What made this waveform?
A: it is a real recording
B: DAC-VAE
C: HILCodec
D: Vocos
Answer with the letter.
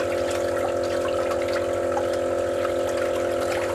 A